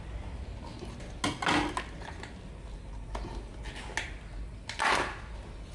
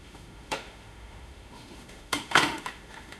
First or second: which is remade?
second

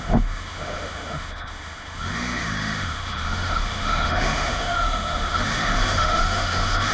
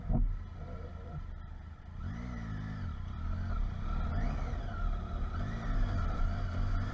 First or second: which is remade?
first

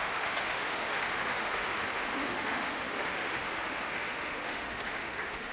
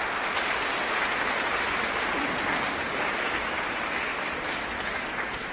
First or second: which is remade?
first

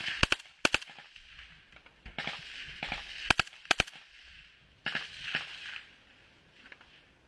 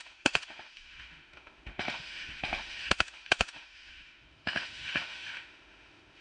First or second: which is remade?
second